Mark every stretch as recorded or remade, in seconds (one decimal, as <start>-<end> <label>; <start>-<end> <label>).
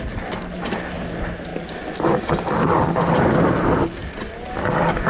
0.0-5.1 recorded